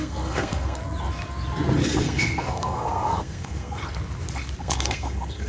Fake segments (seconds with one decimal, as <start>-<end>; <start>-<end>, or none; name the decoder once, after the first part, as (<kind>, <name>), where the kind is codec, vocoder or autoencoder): 0.0-0.8 (codec, SNAC); 2.0-3.8; 4.6-5.5